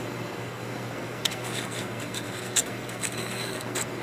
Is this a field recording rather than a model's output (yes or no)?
no